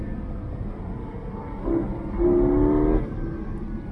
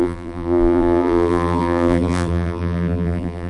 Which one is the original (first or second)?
first